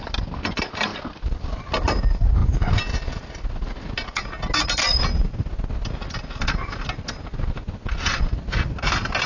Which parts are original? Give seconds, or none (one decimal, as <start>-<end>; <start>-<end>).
0.0-0.9; 1.5-9.3